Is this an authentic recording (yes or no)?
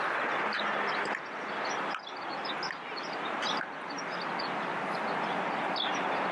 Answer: yes